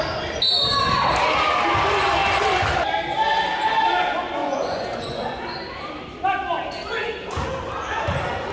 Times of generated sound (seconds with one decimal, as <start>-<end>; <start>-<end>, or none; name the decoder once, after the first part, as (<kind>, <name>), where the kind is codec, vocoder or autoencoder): 4.4-5.4 (vocoder, Vocos)